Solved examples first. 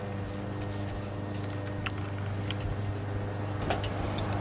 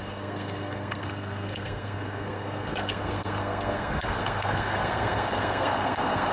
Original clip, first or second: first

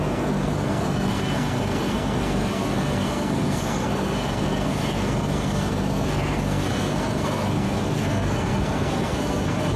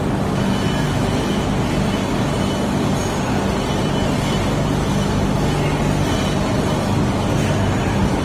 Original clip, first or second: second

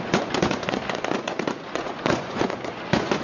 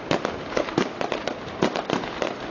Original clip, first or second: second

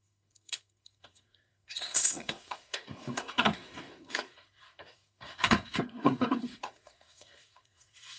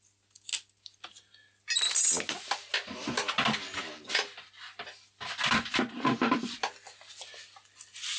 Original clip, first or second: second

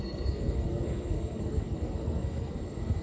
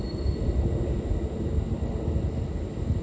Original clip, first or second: second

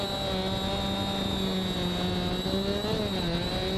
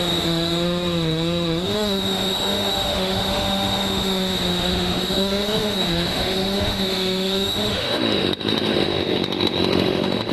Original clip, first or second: first